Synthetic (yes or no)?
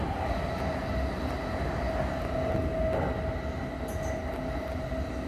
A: no